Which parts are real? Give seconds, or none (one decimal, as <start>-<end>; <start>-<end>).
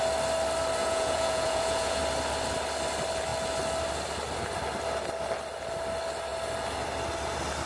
0.0-0.8; 2.0-7.7